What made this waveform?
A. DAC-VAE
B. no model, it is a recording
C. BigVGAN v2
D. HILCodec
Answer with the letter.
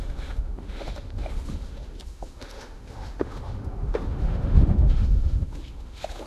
A